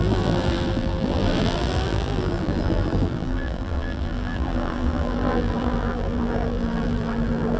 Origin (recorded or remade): remade